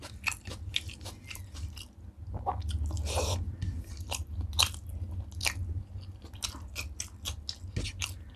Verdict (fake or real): real